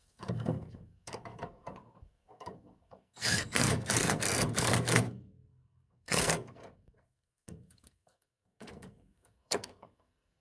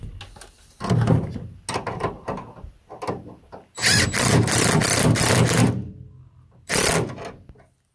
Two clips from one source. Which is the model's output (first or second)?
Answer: first